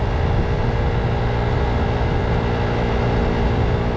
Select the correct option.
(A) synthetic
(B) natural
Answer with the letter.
B